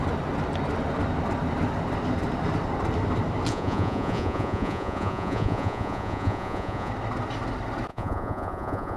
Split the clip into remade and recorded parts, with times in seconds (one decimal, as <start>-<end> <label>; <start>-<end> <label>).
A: 0.0-3.5 recorded; 3.5-6.9 remade; 6.9-7.9 recorded; 7.9-9.0 remade